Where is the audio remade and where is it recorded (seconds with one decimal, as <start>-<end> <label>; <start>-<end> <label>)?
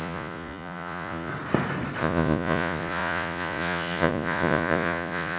0.0-1.3 remade; 1.3-2.0 recorded; 2.0-5.4 remade